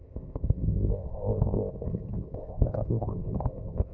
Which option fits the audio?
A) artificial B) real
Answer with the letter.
A